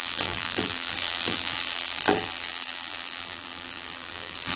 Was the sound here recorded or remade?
remade